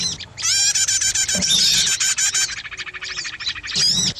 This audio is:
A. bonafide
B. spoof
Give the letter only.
A